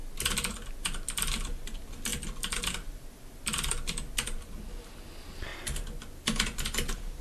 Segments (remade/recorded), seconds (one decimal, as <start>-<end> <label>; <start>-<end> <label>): 0.0-7.2 recorded